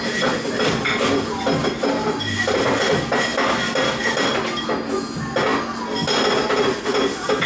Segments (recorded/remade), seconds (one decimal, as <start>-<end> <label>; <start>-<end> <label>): 0.0-7.5 recorded